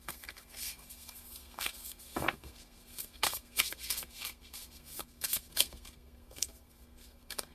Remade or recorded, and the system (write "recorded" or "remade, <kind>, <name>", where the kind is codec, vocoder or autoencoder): remade, codec, SNAC